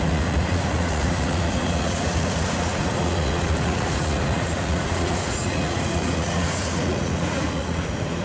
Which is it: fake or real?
fake